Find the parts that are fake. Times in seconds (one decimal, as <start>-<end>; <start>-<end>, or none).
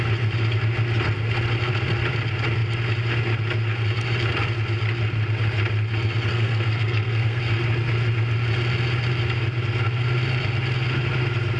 6.3-7.4